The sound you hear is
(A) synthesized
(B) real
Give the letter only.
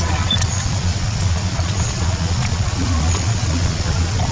A